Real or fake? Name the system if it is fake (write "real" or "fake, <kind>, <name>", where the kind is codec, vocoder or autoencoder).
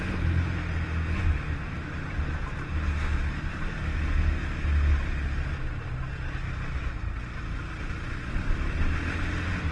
real